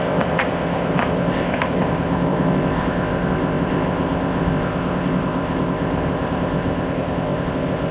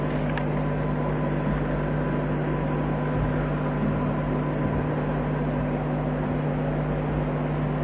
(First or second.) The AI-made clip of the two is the first